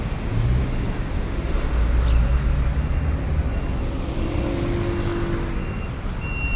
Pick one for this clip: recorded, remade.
recorded